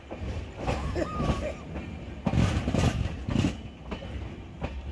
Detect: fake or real real